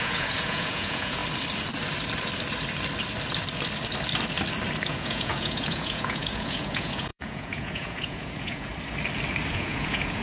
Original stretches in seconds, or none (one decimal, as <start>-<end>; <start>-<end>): 1.2-4.9; 8.7-9.5

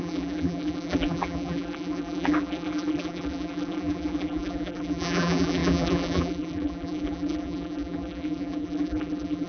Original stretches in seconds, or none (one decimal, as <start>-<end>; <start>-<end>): none

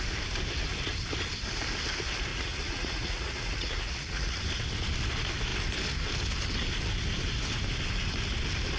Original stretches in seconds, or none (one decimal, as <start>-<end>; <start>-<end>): 0.0-2.3; 4.4-8.8

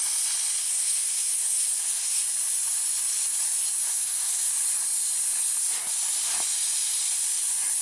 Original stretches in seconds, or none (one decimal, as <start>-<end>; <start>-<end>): 0.0-0.6; 2.2-3.8; 4.5-7.8

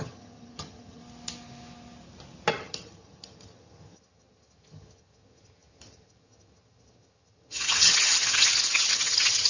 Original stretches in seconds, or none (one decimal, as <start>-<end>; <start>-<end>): 1.0-2.5